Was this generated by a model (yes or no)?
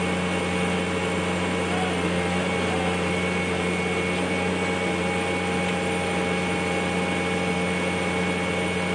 no